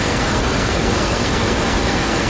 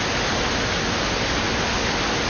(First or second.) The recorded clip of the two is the second